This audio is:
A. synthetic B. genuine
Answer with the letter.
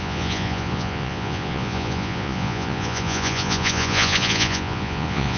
A